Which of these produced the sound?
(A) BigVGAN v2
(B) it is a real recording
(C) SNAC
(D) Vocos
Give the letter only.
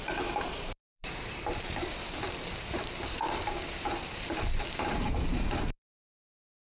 A